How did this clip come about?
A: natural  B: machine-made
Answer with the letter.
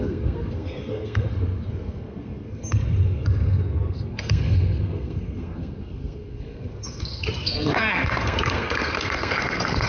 B